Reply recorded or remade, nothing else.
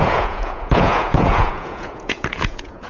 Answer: remade